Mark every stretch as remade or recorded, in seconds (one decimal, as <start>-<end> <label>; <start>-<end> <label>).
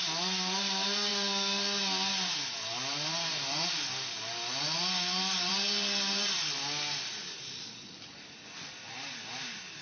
0.0-9.8 recorded